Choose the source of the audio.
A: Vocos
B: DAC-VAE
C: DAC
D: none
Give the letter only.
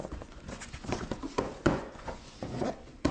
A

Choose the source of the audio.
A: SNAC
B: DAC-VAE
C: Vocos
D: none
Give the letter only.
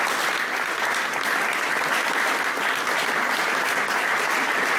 D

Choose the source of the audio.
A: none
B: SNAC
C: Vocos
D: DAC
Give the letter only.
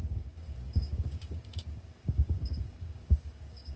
D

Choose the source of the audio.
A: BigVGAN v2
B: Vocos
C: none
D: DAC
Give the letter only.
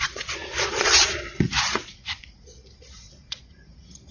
B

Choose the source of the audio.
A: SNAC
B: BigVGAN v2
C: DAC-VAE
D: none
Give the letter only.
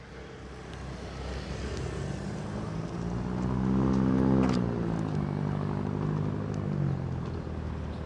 D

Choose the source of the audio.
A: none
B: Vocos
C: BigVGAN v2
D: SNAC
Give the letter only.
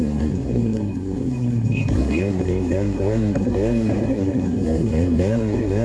D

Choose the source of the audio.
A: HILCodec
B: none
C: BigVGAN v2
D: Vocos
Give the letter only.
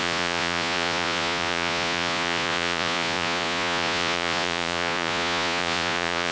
D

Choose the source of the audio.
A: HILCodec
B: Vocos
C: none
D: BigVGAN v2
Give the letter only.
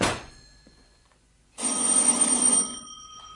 B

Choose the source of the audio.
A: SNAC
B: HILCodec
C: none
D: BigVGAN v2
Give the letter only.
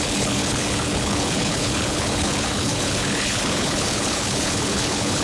B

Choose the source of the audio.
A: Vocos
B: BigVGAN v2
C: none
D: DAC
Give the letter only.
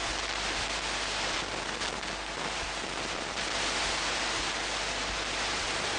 C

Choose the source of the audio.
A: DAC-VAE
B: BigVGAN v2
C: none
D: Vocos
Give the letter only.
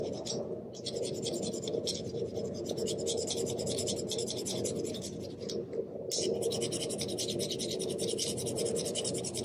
C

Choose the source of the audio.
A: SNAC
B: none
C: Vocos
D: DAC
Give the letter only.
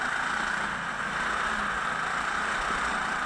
B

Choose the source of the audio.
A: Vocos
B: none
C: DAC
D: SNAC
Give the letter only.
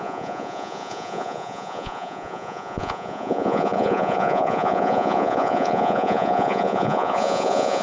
A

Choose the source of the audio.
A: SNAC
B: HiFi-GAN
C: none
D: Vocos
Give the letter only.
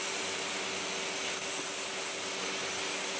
C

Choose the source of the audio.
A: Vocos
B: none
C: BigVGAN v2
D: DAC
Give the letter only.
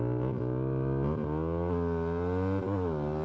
B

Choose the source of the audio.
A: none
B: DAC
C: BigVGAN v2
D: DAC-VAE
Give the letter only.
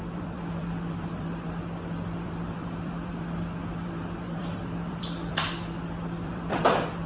C